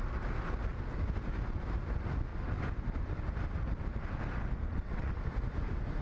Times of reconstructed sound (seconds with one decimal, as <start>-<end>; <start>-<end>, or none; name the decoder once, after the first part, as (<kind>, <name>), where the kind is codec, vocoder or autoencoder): 4.7-5.2 (vocoder, WaveNeXt)